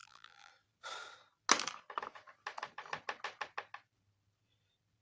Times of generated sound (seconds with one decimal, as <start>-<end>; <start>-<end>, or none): 0.0-0.5